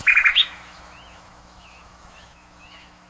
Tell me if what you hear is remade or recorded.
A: remade